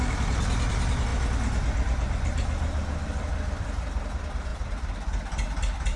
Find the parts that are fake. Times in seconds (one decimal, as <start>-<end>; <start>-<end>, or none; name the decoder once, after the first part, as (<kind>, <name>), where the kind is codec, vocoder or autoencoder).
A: 0.0-1.1 (vocoder, BigVGAN v2); 3.5-6.0